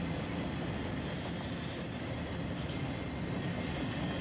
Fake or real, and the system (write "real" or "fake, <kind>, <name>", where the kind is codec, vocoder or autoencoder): real